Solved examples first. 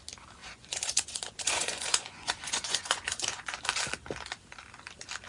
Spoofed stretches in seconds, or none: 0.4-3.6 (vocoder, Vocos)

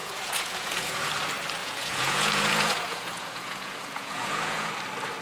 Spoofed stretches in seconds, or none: 0.0-1.1 (vocoder, Vocos); 1.6-4.7

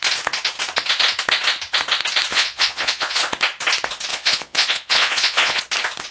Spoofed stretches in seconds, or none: 2.3-3.2 (vocoder, Vocos); 4.1-5.6

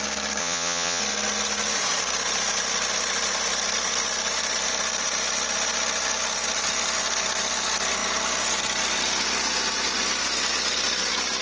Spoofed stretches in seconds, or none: 0.4-1.0 (vocoder, Vocos)

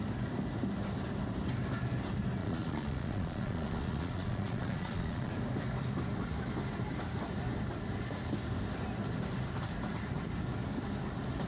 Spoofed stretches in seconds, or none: 2.4-5.3 (vocoder, Vocos)

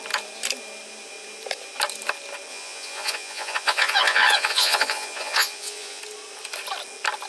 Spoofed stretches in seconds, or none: 2.5-6.0 (vocoder, Vocos)

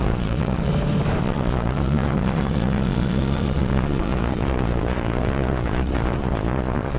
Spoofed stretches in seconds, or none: 0.0-0.7 (vocoder, Vocos); 1.2-7.0